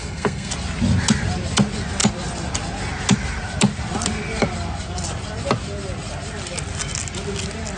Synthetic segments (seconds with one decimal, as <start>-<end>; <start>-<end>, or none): 0.0-0.5